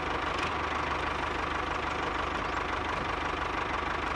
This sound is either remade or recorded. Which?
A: recorded